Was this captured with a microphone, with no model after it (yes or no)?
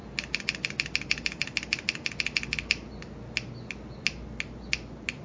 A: yes